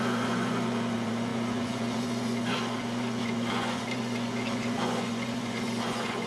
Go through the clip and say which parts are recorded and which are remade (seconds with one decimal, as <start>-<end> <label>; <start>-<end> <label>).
0.0-6.3 remade